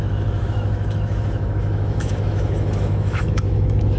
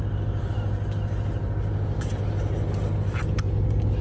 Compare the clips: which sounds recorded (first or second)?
second